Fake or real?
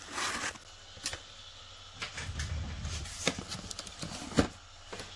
real